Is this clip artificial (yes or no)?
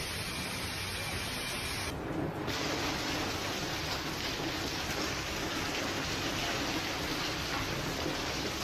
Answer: no